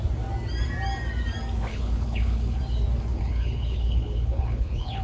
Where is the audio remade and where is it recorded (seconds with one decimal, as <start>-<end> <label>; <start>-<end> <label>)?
0.0-1.7 recorded; 1.7-2.6 remade; 2.6-3.1 recorded; 3.1-5.0 remade